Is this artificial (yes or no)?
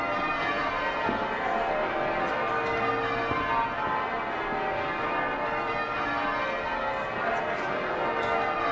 no